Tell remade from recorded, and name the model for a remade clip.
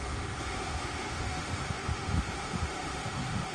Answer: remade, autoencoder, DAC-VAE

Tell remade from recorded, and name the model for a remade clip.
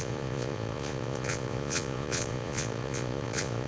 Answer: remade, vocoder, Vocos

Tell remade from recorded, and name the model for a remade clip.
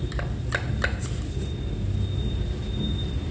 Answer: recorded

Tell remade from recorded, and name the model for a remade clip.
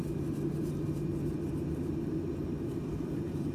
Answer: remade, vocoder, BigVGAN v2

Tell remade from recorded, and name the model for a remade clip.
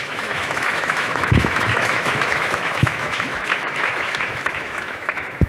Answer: remade, autoencoder, DAC-VAE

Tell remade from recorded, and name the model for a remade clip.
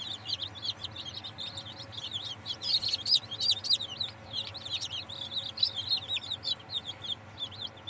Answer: recorded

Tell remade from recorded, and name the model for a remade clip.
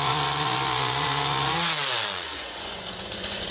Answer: remade, vocoder, Vocos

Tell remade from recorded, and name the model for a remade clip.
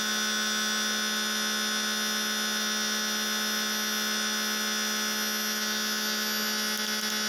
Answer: recorded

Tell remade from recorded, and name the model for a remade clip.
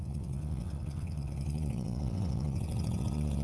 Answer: remade, vocoder, WaveNeXt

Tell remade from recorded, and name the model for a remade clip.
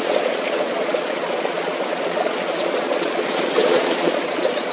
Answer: remade, vocoder, Vocos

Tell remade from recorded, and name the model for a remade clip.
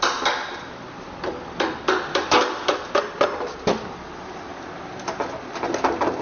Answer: recorded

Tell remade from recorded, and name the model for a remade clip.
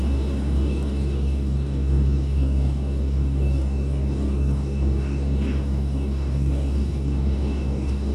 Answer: remade, codec, DAC